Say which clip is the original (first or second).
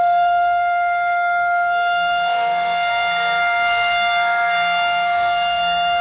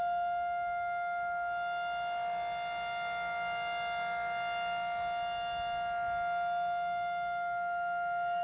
second